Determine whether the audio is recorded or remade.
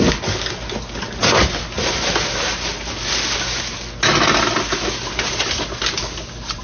recorded